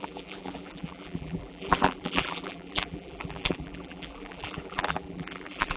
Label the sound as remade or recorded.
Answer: remade